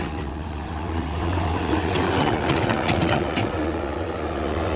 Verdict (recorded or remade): remade